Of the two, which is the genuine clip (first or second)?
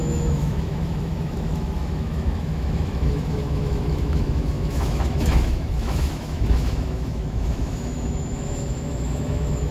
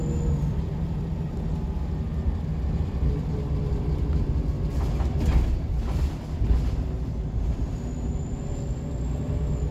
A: second